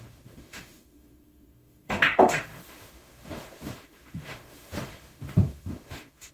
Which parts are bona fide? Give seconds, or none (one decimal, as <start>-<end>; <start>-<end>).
none